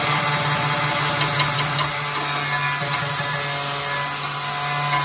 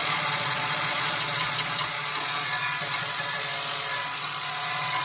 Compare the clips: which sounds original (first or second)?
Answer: first